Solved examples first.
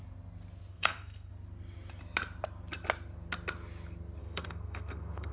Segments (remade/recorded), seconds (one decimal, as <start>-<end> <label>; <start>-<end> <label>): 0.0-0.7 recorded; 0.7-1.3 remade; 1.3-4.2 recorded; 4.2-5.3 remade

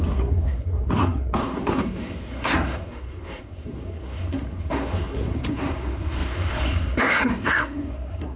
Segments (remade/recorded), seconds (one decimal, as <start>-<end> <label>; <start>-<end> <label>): 0.0-8.4 remade

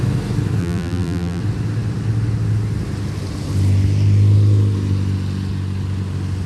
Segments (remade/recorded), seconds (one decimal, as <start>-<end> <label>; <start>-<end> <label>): 0.0-0.6 recorded; 0.6-1.4 remade; 1.4-6.5 recorded

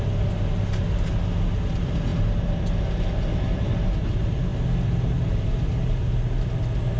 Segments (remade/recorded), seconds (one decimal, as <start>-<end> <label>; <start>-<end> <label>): 0.0-7.0 recorded

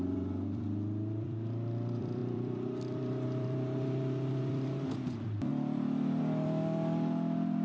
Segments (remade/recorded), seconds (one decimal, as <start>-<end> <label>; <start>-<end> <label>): 0.0-7.6 remade

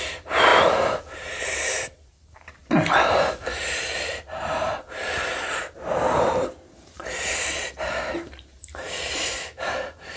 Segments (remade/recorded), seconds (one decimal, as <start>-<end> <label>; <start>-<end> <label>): 0.0-0.5 remade; 0.5-1.4 recorded; 1.4-2.6 remade; 2.6-4.0 recorded; 4.0-10.2 remade